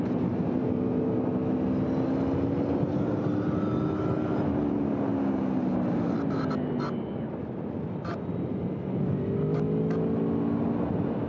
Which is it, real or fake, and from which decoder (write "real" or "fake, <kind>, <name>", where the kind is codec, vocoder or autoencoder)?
real